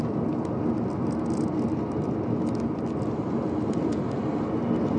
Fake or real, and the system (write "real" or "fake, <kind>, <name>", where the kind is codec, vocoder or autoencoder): real